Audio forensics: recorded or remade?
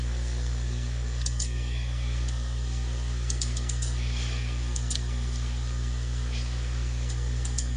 remade